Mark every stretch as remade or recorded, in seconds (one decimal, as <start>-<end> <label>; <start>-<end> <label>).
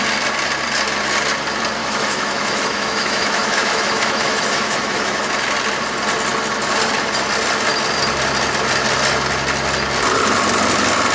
0.0-1.8 recorded; 1.8-5.3 remade; 5.3-11.1 recorded